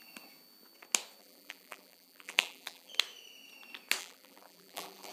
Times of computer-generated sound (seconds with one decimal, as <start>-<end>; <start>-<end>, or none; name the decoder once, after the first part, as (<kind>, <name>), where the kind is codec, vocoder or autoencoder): 1.2-2.9 (vocoder, BigVGAN v2); 4.0-5.1